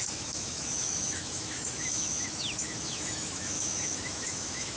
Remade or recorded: remade